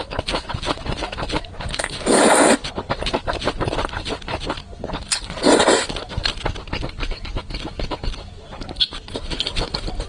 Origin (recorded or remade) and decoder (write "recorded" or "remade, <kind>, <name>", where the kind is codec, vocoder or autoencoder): recorded